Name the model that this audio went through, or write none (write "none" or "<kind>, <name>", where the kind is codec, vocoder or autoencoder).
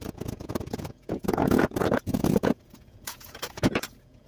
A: vocoder, Vocos